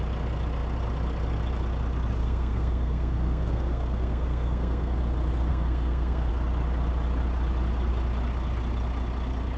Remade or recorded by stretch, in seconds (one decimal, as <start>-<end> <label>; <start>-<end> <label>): 0.0-2.2 recorded; 2.2-5.0 remade; 5.0-5.5 recorded; 5.5-6.3 remade; 6.3-9.6 recorded